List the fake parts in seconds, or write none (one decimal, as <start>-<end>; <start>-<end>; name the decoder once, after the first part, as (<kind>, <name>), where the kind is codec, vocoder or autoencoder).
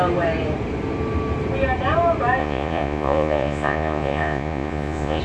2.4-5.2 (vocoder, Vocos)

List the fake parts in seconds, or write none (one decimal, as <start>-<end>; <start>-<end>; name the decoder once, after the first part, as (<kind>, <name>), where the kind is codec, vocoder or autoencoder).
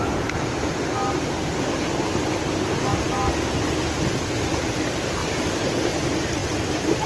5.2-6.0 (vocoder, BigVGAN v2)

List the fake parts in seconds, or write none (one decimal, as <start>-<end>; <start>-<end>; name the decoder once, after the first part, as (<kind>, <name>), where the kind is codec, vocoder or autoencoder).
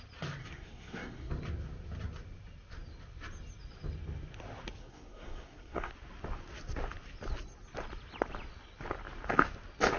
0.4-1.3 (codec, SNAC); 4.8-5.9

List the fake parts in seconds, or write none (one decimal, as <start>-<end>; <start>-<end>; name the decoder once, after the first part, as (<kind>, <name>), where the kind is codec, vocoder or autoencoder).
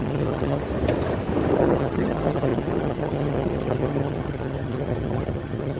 0.0-0.6 (vocoder, HiFi-GAN); 1.6-5.8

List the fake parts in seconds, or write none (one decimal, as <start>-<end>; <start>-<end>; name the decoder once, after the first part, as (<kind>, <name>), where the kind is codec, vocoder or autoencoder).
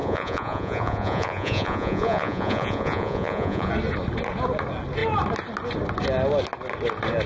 0.0-3.7 (vocoder, Vocos)